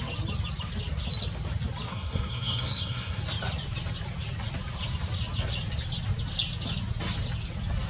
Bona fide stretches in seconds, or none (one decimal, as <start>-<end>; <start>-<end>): 0.0-1.9; 3.2-7.9